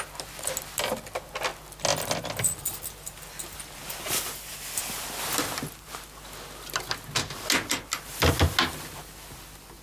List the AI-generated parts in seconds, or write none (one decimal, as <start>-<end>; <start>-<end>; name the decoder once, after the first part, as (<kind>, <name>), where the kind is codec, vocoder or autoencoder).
none